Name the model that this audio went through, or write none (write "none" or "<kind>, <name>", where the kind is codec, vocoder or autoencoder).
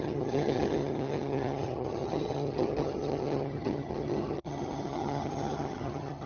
vocoder, HiFi-GAN